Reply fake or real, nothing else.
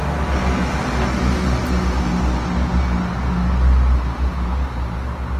real